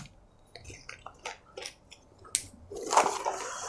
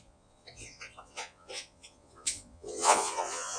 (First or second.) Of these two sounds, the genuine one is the first